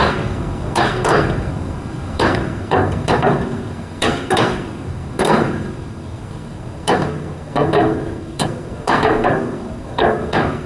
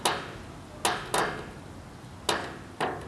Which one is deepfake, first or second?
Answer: first